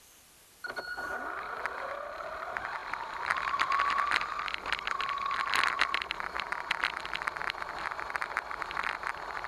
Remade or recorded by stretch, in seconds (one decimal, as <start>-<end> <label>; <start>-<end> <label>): 0.0-9.5 remade